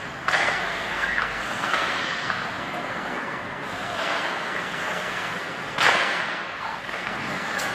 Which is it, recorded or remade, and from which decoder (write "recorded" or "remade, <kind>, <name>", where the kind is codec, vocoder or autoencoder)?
remade, codec, SNAC